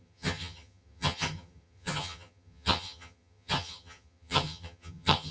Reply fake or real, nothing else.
fake